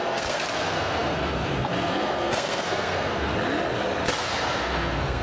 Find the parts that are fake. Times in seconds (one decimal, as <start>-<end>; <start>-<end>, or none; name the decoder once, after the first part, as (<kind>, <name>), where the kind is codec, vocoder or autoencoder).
0.0-3.3 (codec, SNAC); 4.2-5.2